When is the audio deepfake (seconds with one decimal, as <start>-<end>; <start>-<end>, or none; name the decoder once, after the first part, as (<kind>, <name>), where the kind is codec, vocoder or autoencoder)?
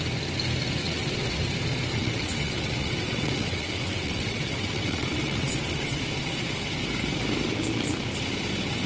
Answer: 0.8-1.4 (vocoder, WaveNeXt); 1.9-6.0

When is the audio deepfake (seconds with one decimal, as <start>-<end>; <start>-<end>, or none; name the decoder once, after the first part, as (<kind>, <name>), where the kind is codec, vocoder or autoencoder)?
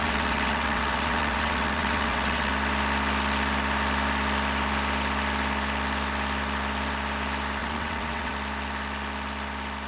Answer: 0.0-2.5 (vocoder, WaveNeXt); 7.6-8.3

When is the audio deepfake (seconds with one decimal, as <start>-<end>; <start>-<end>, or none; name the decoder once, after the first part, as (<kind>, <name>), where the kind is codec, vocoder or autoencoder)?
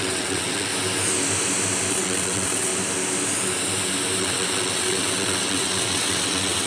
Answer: 0.0-0.7 (vocoder, WaveNeXt); 1.9-2.7; 4.2-6.7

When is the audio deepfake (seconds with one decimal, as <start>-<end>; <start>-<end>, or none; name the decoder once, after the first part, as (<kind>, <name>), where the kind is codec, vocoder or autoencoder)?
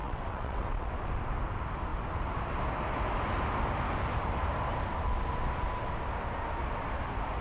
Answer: 0.0-0.9 (vocoder, WaveNeXt)